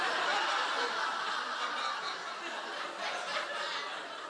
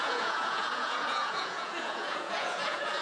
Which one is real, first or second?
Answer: first